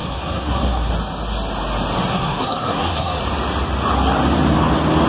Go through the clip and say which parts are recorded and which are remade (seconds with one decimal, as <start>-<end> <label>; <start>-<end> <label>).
0.0-0.9 remade; 0.9-2.1 recorded; 2.1-3.2 remade; 3.2-5.1 recorded